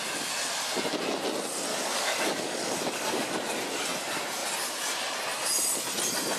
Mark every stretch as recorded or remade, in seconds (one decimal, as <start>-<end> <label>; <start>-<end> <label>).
0.0-1.7 recorded; 1.7-3.3 remade; 3.3-6.4 recorded